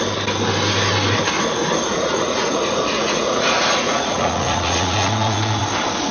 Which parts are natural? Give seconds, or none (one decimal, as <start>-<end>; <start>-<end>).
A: 0.0-1.9; 5.6-6.1